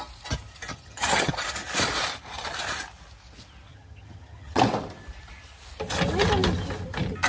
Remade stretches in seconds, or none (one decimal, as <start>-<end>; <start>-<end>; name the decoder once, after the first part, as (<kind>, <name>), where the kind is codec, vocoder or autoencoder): 0.7-1.3 (vocoder, HiFi-GAN); 3.7-4.6